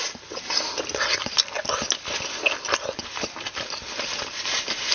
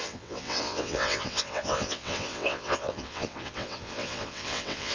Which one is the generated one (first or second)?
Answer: second